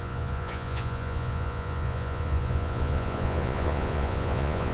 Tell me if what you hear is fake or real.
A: fake